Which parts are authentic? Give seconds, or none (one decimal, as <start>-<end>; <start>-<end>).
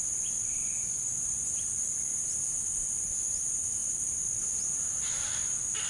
0.0-0.6; 1.6-5.9